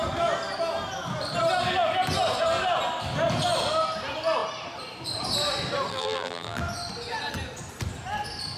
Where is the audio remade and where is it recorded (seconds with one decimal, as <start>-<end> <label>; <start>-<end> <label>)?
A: 0.0-5.9 recorded; 5.9-6.6 remade; 6.6-8.6 recorded